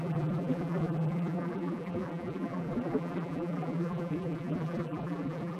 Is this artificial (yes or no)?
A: yes